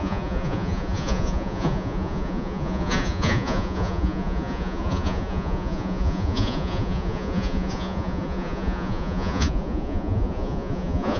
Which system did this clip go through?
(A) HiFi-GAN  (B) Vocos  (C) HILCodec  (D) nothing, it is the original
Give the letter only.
B